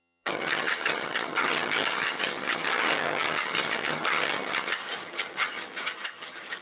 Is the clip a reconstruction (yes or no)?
yes